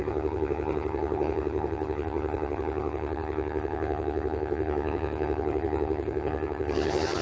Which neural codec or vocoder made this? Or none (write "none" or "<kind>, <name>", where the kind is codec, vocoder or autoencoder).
vocoder, HiFi-GAN